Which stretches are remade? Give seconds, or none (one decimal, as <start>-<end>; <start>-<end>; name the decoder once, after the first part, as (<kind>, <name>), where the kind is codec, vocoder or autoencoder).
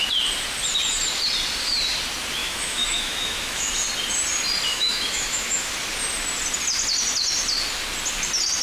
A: 2.4-3.7 (autoencoder, DAC-VAE); 4.7-5.7